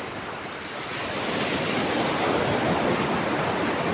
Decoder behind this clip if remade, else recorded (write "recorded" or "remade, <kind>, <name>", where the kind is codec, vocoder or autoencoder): recorded